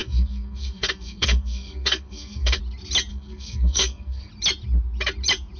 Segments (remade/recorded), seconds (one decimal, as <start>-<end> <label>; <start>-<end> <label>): 0.0-2.6 remade; 2.6-3.1 recorded; 3.1-4.3 remade; 4.3-5.6 recorded